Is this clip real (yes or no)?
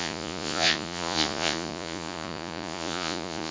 no